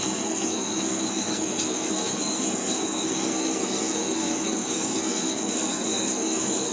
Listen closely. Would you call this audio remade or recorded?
remade